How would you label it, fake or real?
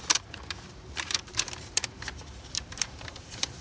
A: fake